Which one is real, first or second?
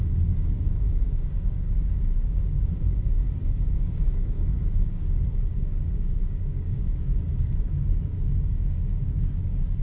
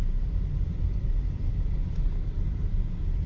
second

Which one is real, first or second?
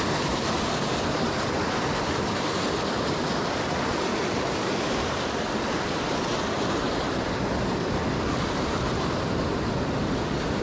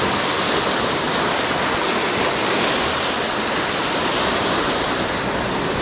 second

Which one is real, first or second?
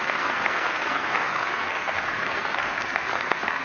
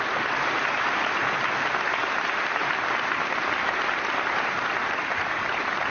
second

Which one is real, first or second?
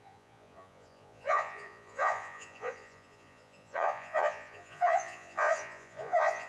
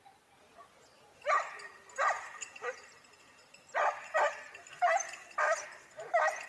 second